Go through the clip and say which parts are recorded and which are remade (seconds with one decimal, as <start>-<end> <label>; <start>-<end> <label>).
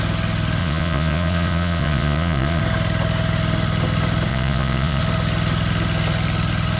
0.0-0.6 recorded; 0.6-2.6 remade; 2.6-4.3 recorded; 4.3-5.0 remade; 5.0-6.8 recorded